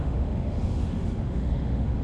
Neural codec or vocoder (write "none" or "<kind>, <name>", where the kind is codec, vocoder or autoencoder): autoencoder, DAC-VAE